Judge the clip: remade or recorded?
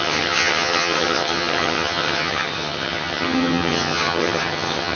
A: remade